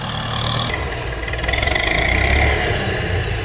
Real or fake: real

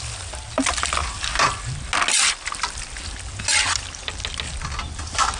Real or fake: real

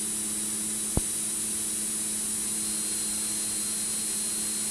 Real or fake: real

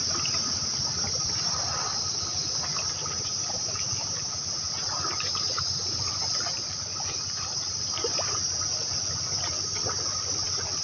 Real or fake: real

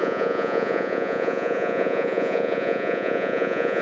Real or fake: fake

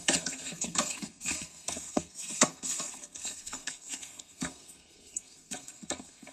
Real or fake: fake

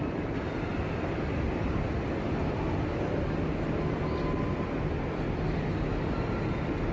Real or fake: real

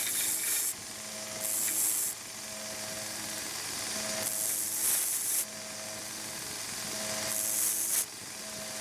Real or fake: real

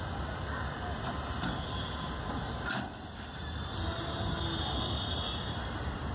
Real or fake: real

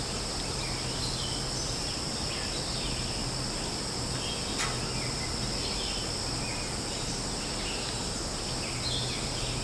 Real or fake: real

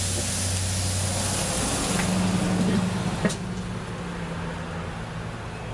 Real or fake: real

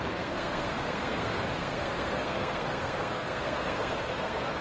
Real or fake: fake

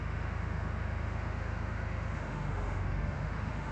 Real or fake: fake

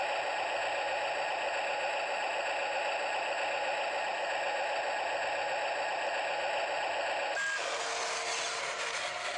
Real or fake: real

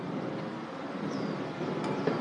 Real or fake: fake